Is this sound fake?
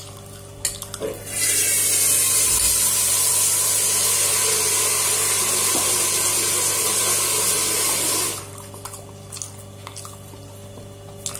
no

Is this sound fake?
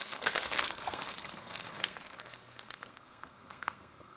yes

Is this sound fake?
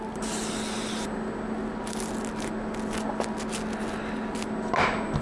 no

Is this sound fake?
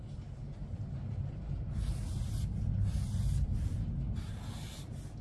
no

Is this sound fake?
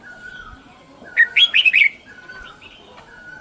no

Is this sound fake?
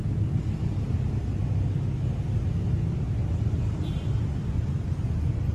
no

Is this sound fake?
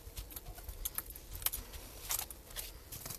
no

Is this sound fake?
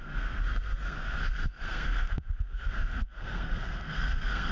yes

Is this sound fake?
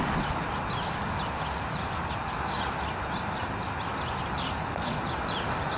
no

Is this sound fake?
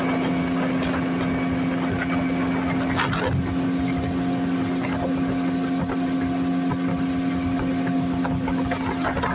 no